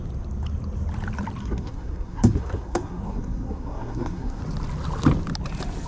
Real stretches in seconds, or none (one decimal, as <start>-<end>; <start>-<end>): 0.0-1.4; 4.4-5.9